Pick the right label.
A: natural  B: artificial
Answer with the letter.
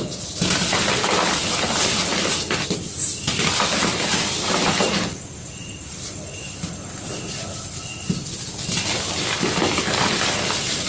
A